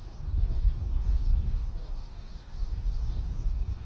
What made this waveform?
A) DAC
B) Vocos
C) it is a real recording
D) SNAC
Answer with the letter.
A